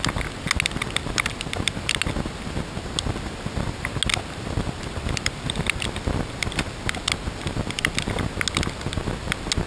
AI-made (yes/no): no